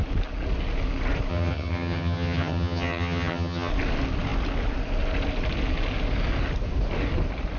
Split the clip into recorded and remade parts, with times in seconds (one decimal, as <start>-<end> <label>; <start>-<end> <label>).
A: 0.0-1.3 recorded; 1.3-3.7 remade; 3.7-7.6 recorded